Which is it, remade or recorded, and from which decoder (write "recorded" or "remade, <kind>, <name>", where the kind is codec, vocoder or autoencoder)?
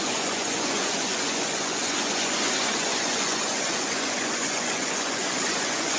remade, vocoder, Vocos